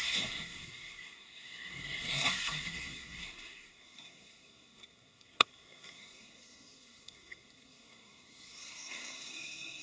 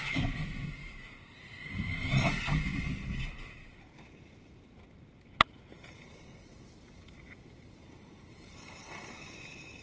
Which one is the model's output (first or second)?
first